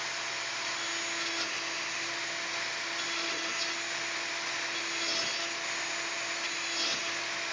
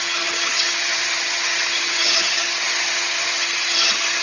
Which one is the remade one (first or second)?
second